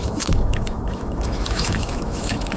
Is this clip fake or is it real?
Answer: fake